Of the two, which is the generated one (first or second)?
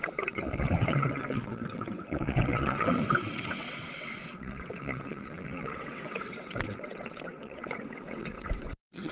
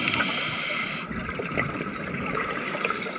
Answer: first